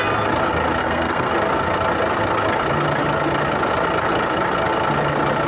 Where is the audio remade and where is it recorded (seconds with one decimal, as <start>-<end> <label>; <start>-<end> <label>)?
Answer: 0.0-0.8 recorded; 0.8-1.3 remade; 1.3-5.5 recorded